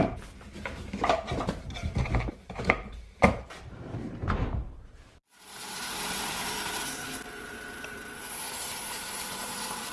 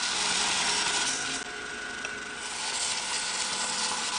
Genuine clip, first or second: second